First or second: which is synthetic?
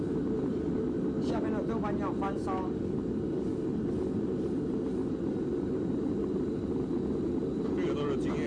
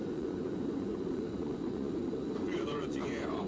second